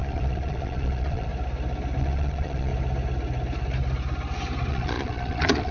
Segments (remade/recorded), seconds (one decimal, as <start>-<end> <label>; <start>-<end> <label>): 0.0-1.3 remade; 1.3-2.0 recorded; 2.0-2.7 remade; 2.7-4.7 recorded; 4.7-5.7 remade